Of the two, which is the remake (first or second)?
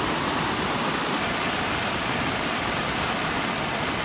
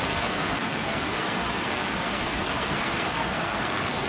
second